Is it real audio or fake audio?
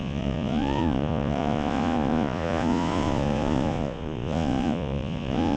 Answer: fake